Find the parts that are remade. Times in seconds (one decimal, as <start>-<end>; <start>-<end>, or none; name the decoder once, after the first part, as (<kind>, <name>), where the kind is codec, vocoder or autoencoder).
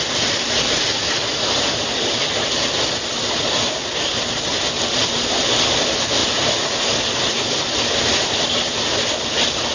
none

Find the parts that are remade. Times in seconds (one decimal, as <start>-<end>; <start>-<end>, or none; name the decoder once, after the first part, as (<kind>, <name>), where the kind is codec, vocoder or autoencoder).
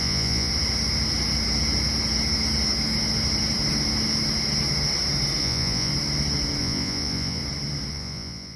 0.0-0.5 (vocoder, Vocos); 5.4-5.9; 6.6-7.4; 7.9-8.6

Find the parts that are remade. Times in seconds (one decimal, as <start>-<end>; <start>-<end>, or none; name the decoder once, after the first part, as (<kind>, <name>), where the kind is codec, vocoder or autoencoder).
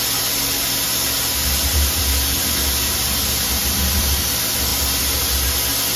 1.4-2.0 (vocoder, BigVGAN v2); 3.6-4.2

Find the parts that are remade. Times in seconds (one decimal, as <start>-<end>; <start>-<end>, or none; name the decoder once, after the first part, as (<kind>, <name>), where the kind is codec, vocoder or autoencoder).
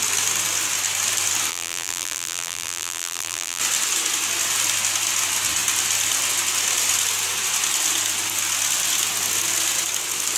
1.5-3.6 (vocoder, BigVGAN v2)